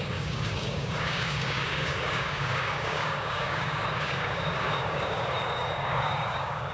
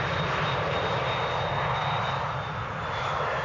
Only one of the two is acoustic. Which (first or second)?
second